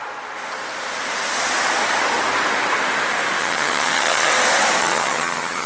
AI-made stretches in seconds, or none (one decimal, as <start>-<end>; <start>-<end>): 3.4-4.3; 4.8-5.7